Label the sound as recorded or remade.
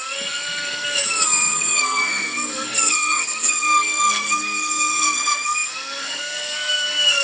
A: remade